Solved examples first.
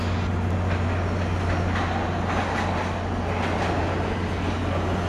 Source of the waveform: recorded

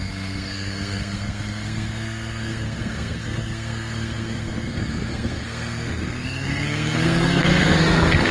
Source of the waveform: remade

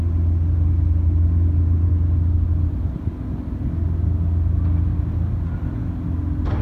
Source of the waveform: recorded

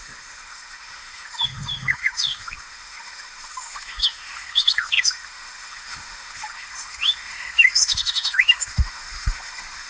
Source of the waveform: remade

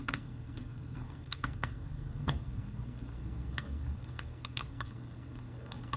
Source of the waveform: remade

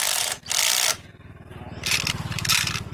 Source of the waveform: recorded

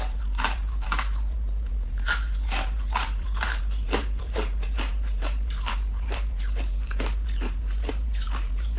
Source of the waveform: remade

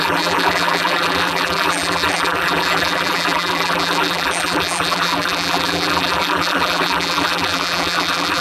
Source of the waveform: remade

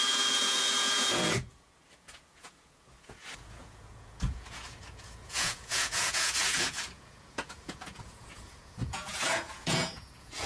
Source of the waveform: remade